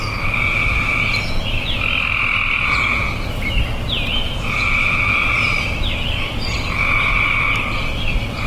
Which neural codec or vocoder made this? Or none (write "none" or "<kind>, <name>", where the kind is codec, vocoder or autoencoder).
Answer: none